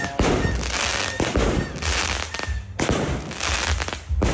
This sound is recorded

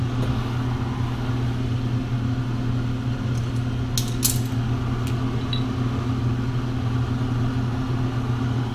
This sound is recorded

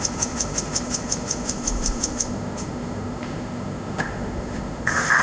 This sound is remade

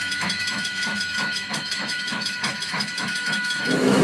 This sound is remade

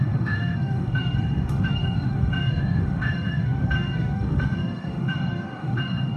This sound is remade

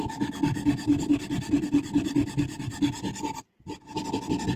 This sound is recorded